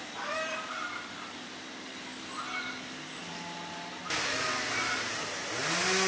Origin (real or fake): real